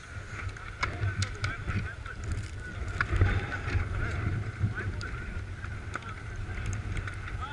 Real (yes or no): yes